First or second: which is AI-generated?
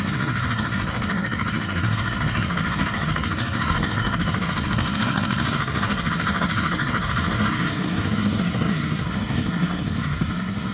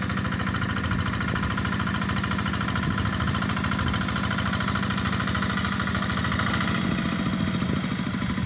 first